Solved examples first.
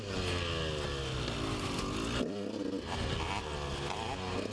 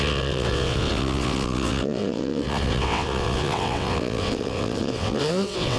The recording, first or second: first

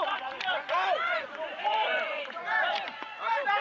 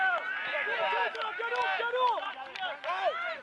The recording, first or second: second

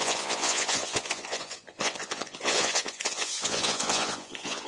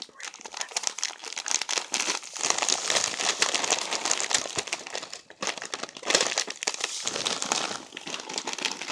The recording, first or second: second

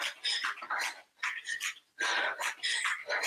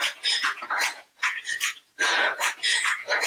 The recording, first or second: first